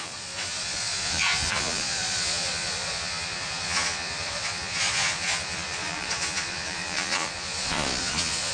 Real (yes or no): no